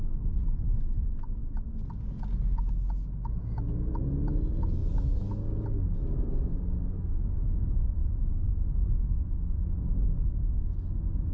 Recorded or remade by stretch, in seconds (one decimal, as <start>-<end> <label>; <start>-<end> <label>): 0.0-8.0 recorded; 8.0-8.6 remade; 8.6-11.3 recorded